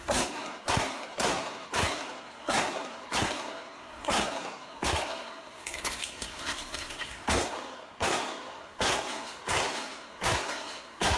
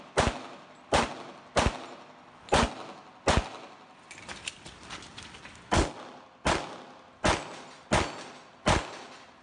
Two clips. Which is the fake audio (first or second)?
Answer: first